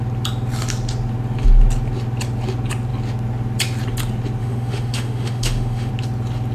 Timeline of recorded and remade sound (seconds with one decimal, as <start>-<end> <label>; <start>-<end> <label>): 0.0-4.4 recorded; 4.4-5.9 remade; 5.9-6.5 recorded